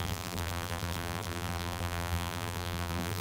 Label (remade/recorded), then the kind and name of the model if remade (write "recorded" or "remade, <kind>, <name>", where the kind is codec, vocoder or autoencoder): remade, vocoder, BigVGAN v2